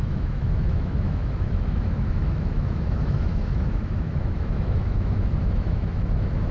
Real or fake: fake